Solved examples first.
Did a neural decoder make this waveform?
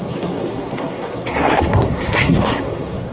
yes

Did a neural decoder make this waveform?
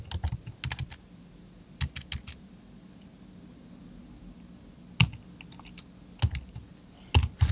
no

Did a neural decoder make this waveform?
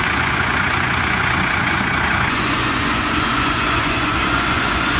yes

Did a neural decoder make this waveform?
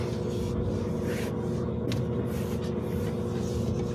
no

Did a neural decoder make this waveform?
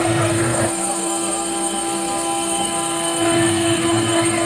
yes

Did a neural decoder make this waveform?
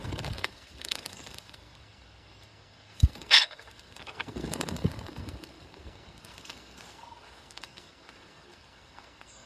yes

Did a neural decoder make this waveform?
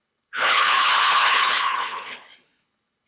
yes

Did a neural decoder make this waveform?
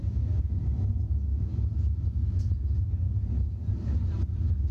no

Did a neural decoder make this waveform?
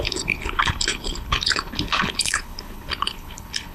yes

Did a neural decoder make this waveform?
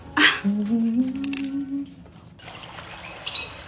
no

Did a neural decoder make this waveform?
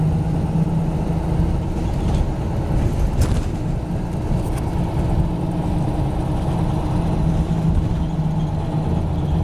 no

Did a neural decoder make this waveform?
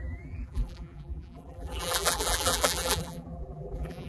yes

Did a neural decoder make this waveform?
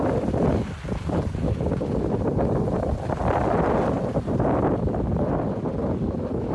no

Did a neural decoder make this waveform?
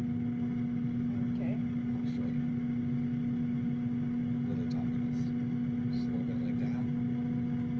no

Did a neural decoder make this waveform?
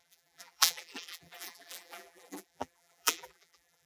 yes